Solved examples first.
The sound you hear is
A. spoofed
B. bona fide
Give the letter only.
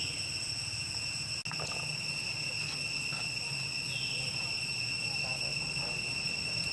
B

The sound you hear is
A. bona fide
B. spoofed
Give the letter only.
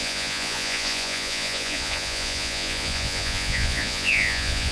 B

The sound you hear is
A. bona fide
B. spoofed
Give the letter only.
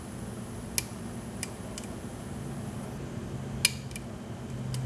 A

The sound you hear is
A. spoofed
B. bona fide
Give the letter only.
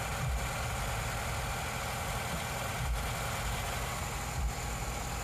B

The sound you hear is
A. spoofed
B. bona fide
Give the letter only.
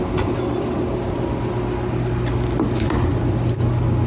B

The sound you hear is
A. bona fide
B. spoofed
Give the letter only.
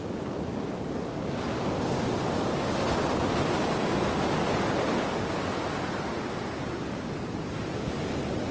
A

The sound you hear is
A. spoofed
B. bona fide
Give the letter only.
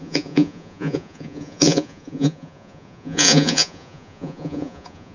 A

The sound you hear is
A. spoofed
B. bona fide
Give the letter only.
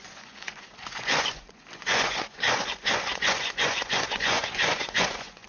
A